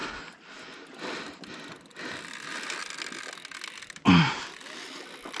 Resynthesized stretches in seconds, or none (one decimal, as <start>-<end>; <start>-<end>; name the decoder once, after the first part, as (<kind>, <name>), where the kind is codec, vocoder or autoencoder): none

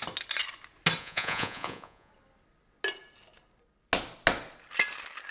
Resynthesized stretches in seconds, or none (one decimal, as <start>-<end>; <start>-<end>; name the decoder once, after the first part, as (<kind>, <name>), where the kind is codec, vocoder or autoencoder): 1.0-2.1 (vocoder, Vocos)

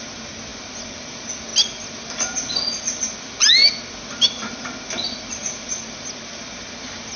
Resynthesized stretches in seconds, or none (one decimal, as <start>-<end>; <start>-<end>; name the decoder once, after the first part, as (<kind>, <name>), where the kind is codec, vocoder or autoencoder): none